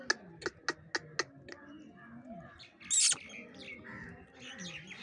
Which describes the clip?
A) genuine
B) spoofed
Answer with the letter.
A